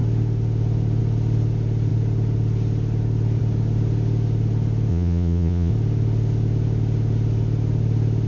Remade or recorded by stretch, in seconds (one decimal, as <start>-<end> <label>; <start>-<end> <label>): 0.0-4.9 recorded; 4.9-5.7 remade; 5.7-8.3 recorded